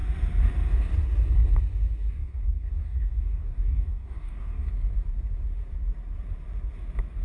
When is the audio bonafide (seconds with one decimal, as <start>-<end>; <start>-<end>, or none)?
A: 0.0-2.2; 4.7-7.2